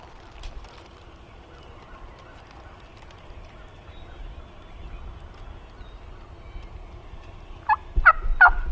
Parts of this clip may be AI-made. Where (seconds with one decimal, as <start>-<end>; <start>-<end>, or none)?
7.0-8.1